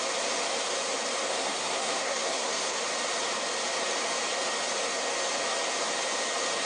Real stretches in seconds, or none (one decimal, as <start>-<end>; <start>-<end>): 0.0-1.3; 2.8-6.7